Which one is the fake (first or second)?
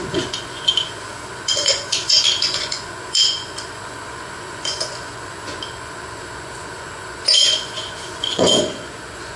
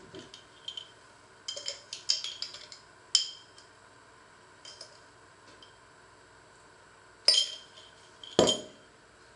first